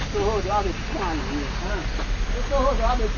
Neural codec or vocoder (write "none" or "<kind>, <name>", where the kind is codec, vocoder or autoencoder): none